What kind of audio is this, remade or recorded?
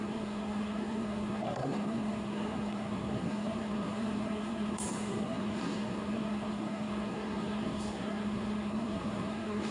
remade